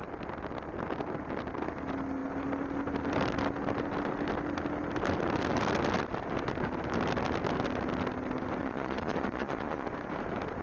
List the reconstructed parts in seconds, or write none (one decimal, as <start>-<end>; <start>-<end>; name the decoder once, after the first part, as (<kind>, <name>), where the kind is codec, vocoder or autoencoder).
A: 8.6-9.9 (vocoder, Vocos)

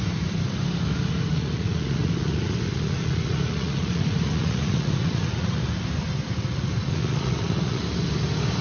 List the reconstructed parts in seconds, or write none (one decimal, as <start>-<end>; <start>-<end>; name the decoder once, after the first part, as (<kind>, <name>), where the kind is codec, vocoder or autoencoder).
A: 1.3-5.6 (vocoder, Vocos); 6.8-7.8